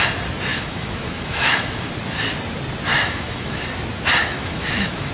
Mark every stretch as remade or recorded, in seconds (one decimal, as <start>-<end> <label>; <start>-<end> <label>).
0.0-0.5 recorded; 0.5-1.9 remade; 1.9-2.9 recorded; 2.9-3.6 remade; 3.6-4.2 recorded; 4.2-5.1 remade